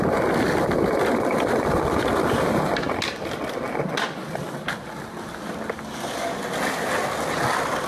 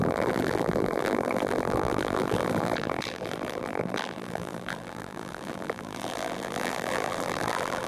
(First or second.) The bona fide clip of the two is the first